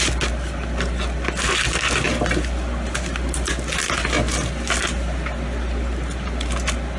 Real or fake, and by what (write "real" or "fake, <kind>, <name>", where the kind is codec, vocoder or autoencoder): real